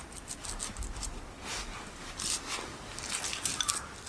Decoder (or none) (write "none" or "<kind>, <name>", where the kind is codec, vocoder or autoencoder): none